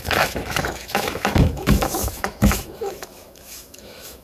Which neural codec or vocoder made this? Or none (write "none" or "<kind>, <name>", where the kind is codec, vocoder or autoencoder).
autoencoder, DAC-VAE